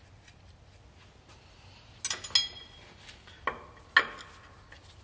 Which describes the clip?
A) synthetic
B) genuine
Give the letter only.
B